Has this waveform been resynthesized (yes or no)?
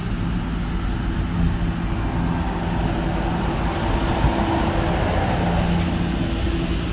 no